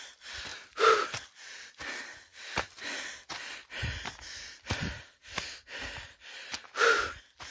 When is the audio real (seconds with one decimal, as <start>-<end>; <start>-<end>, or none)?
0.0-0.5; 1.7-7.5